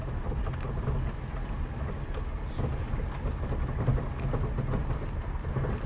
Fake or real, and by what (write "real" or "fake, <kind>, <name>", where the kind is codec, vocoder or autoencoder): real